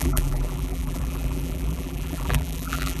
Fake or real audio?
fake